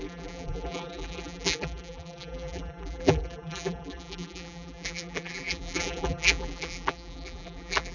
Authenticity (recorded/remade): remade